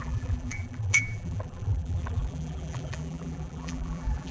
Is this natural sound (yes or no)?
no